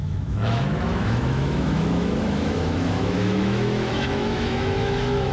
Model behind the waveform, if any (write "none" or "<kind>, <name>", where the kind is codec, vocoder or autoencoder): autoencoder, DAC-VAE